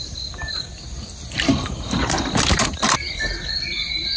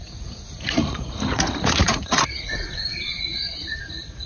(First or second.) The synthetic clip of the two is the second